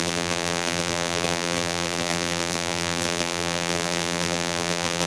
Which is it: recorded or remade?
remade